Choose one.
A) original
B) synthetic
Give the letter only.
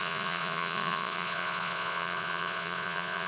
B